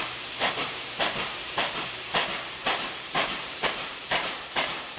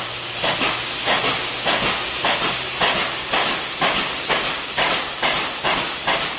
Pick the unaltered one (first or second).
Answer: second